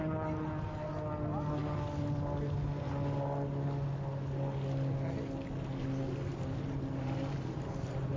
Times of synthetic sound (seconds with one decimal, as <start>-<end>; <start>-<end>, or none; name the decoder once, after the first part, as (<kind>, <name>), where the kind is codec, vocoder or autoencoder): 6.3-8.2 (vocoder, BigVGAN v2)